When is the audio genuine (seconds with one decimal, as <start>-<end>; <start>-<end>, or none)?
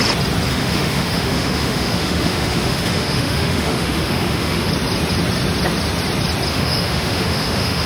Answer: 0.0-0.5; 4.7-6.5